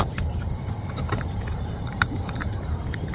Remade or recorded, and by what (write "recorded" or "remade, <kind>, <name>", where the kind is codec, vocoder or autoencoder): remade, vocoder, BigVGAN v2